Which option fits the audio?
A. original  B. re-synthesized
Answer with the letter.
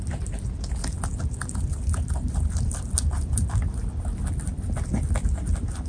A